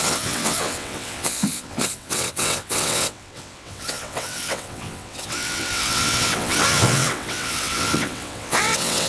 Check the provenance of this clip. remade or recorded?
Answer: remade